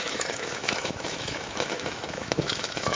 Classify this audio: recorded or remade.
remade